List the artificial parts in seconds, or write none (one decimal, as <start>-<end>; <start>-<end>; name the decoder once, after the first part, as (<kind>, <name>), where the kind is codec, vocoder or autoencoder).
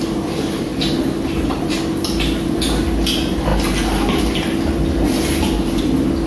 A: none